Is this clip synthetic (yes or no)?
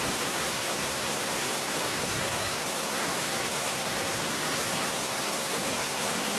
yes